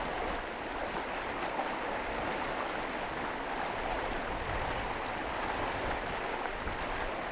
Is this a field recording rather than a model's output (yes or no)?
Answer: yes